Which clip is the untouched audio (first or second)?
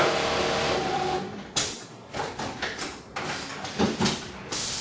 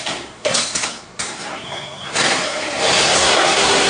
first